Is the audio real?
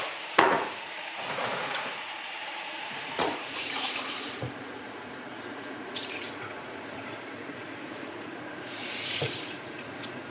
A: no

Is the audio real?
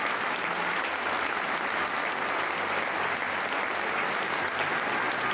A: yes